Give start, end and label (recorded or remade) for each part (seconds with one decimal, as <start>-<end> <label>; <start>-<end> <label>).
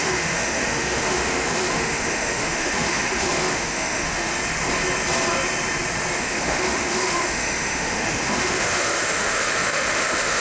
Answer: 0.0-4.3 remade; 4.3-6.2 recorded; 6.2-10.4 remade